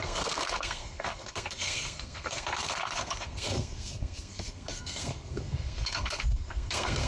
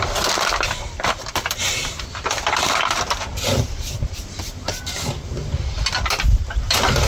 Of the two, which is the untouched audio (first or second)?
second